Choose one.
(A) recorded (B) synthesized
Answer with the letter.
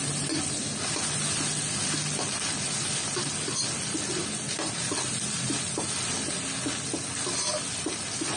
A